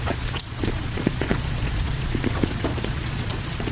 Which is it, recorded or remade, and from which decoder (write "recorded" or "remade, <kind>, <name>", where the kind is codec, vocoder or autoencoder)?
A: remade, vocoder, Vocos